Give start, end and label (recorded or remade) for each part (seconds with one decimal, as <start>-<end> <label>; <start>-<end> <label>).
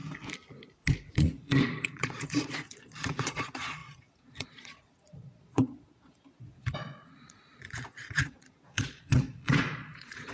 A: 0.0-1.1 recorded; 1.1-10.3 remade